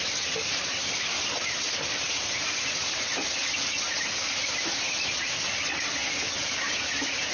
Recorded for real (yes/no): yes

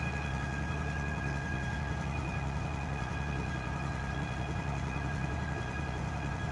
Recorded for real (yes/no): no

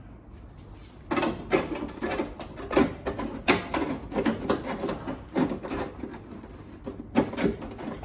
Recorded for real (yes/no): yes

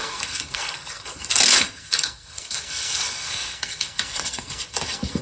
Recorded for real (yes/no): no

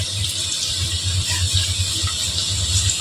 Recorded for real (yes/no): no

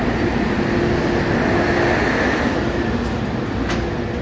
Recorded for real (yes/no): yes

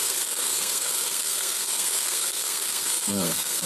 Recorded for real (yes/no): no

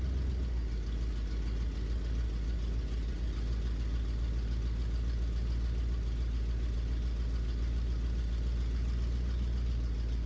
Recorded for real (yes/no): yes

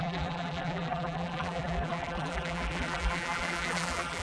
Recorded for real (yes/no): no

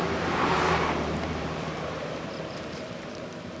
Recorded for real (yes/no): no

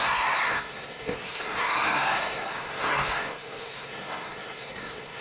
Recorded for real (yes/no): no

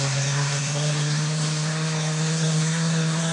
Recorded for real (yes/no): no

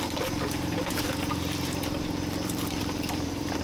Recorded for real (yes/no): no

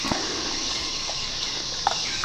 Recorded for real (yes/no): no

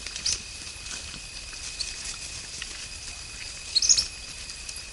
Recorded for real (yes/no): yes